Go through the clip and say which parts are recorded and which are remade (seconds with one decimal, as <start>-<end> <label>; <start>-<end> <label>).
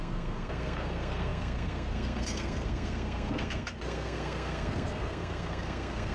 0.0-6.1 remade